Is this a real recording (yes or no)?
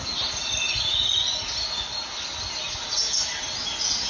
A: yes